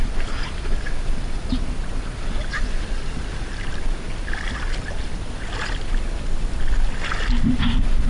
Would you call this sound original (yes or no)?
yes